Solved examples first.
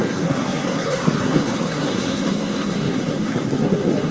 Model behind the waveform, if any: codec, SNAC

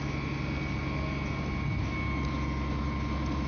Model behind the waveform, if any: none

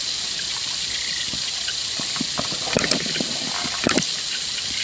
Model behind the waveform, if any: none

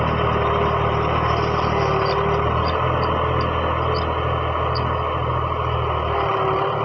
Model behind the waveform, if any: none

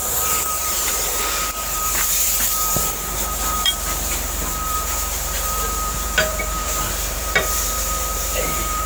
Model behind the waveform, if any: vocoder, BigVGAN v2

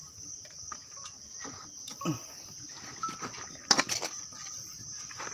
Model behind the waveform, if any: none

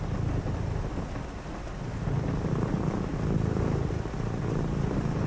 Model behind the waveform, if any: none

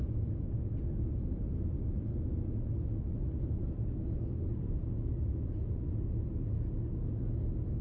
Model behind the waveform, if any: none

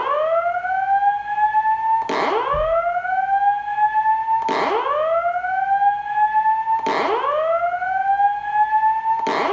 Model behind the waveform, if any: none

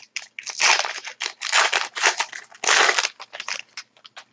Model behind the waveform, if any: none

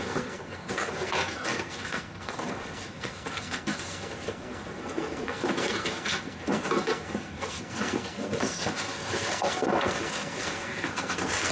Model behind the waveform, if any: codec, SNAC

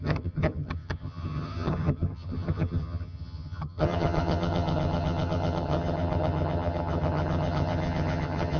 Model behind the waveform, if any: vocoder, HiFi-GAN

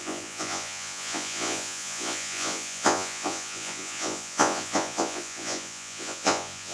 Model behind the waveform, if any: vocoder, Vocos